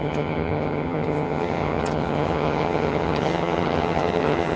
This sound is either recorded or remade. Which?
remade